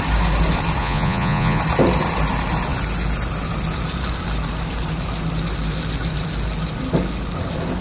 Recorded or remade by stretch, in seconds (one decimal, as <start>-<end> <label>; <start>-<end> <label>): 0.0-0.8 recorded; 0.8-1.6 remade; 1.6-7.8 recorded